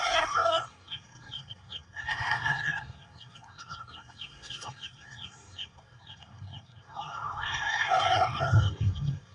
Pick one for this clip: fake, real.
fake